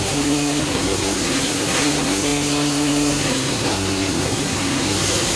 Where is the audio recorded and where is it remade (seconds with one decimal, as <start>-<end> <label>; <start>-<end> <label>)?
0.0-5.4 remade